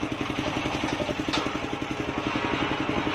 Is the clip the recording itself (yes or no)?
yes